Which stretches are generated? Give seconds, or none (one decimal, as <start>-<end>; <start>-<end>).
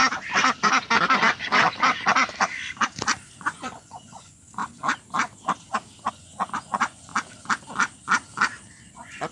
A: 3.4-4.6; 6.1-7.1; 8.9-9.3